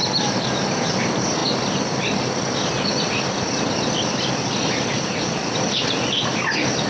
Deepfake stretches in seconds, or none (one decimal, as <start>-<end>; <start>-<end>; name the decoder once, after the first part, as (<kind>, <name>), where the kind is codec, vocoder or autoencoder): none